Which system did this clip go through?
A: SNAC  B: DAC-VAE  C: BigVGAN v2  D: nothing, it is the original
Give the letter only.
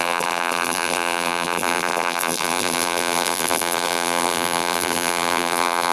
C